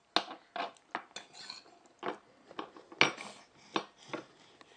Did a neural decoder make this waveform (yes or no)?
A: no